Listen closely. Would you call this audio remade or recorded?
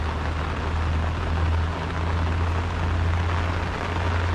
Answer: recorded